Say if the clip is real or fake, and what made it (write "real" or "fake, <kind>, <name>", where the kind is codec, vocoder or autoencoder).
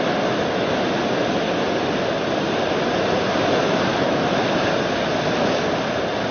real